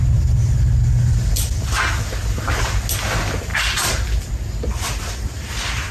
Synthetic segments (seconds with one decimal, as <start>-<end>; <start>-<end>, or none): none